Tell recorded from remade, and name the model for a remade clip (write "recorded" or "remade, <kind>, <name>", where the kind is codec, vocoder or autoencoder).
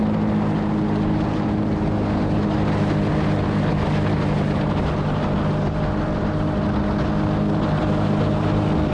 recorded